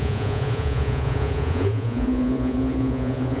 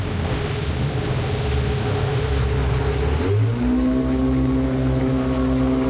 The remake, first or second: first